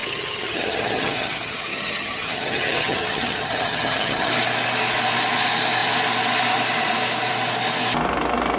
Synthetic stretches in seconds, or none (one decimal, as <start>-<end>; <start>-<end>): 0.0-4.3